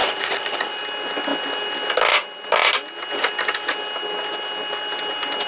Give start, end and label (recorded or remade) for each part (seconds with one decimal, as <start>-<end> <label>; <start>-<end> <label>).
0.0-0.7 remade; 0.7-5.5 recorded